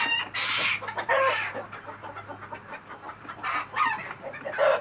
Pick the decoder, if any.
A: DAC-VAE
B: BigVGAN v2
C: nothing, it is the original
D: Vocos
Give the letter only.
B